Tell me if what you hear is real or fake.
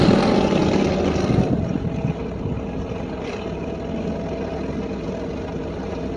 real